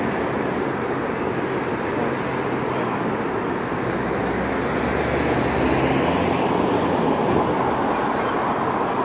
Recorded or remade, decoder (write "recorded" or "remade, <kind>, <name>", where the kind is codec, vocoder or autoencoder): recorded